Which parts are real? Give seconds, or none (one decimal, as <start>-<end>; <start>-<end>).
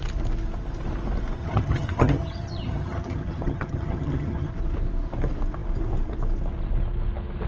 0.0-1.4; 4.5-7.5